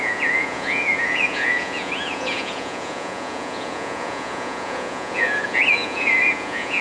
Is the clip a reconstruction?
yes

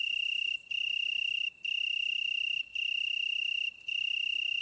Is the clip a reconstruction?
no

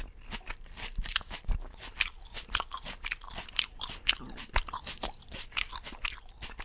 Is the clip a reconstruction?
no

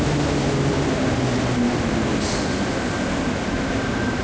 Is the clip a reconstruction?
no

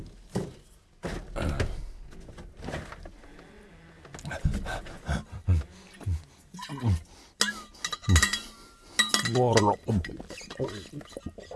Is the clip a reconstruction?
no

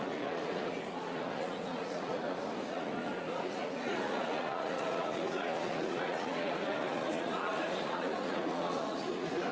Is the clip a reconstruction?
yes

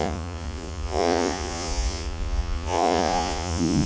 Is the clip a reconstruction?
yes